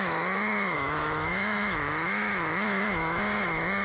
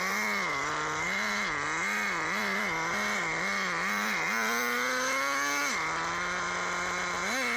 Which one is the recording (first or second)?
second